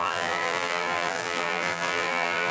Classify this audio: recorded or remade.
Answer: remade